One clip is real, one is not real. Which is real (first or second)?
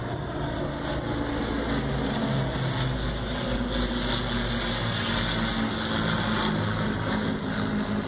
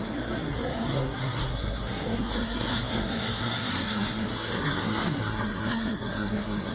first